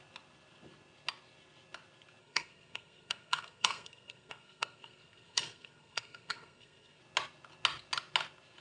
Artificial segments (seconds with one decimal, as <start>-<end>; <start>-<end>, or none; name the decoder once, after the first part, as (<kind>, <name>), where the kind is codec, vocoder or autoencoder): 2.2-7.0 (codec, SNAC)